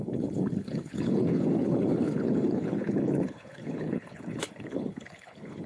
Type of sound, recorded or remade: remade